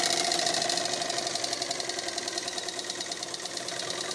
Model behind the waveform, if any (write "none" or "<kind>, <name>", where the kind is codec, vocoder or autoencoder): none